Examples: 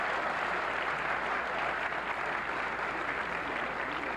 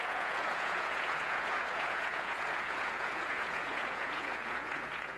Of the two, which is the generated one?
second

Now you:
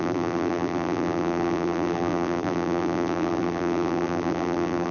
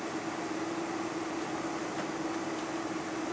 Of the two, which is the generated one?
first